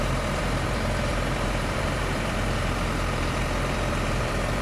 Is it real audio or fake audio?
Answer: fake